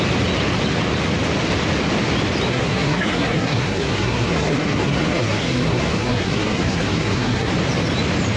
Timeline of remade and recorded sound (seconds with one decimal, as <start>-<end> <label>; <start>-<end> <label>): 0.0-2.5 recorded; 2.5-7.5 remade; 7.5-8.4 recorded